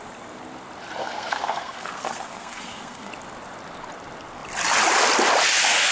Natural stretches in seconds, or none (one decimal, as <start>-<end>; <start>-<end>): 0.0-1.0; 3.1-5.9